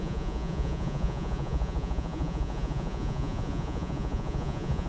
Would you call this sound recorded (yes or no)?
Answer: no